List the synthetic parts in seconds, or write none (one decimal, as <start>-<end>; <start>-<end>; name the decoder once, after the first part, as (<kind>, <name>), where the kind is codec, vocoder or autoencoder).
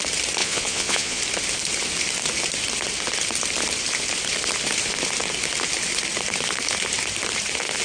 0.4-1.2 (vocoder, Vocos)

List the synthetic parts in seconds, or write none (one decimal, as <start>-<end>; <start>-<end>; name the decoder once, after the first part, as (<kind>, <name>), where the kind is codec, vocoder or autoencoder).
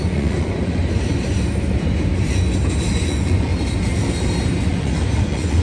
0.0-0.8 (vocoder, Vocos); 2.9-3.5; 4.7-5.6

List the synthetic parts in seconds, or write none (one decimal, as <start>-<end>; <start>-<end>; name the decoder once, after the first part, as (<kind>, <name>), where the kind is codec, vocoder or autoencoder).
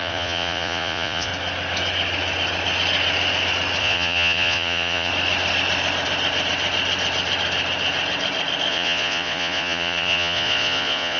0.0-1.3 (vocoder, Vocos); 3.8-5.1; 8.7-11.2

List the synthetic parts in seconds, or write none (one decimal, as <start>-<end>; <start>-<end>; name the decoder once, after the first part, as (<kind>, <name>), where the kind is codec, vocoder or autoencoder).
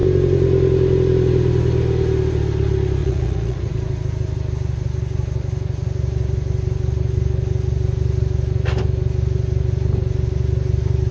3.0-3.7 (vocoder, Vocos)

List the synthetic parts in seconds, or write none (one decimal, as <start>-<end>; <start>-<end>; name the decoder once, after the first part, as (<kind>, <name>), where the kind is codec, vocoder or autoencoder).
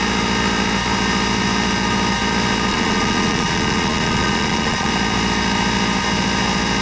2.7-4.9 (vocoder, Vocos)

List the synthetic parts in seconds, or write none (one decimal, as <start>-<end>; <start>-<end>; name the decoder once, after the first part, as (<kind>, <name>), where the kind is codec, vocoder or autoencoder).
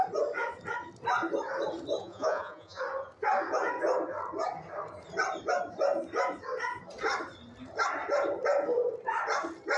2.0-2.8 (vocoder, Vocos)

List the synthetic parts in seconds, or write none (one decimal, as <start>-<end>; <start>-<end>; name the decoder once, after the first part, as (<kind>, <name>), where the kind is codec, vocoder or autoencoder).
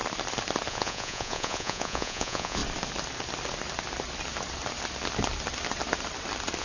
0.7-2.6 (vocoder, Vocos)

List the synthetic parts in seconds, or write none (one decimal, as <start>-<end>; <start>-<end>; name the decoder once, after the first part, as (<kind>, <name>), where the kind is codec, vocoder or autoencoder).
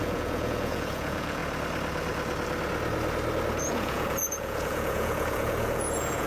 0.0-1.4 (vocoder, Vocos); 3.6-6.3